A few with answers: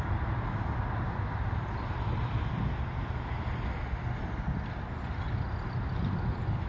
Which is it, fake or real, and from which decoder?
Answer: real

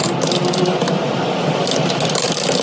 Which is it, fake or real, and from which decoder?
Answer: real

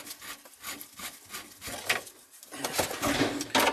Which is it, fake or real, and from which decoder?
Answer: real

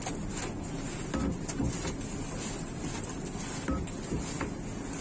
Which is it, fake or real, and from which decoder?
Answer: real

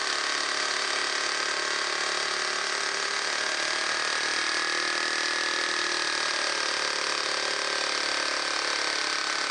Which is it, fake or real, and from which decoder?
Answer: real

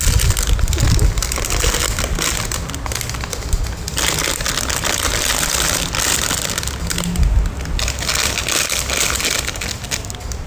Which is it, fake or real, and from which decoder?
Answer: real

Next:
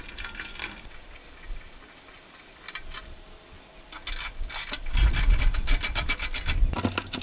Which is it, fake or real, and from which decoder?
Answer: real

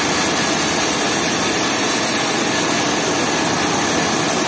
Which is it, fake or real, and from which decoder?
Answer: real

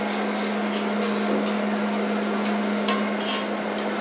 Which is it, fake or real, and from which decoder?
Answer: real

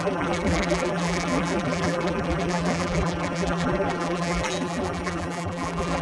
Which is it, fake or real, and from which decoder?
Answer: fake, vocoder, BigVGAN v2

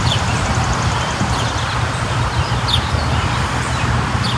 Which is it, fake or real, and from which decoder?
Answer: fake, vocoder, BigVGAN v2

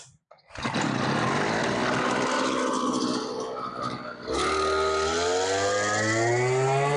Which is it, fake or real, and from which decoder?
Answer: real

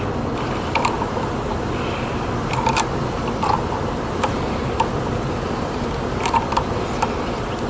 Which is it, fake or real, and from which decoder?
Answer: fake, vocoder, BigVGAN v2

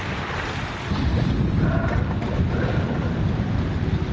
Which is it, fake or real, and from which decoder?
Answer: real